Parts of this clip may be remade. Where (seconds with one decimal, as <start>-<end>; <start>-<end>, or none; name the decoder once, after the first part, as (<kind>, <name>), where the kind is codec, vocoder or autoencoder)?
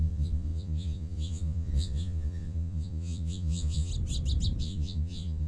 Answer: 0.0-3.9 (vocoder, Vocos); 4.6-5.5